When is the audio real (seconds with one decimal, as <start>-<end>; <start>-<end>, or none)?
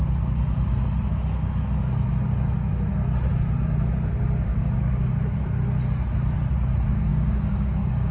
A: 0.0-4.5; 5.2-7.1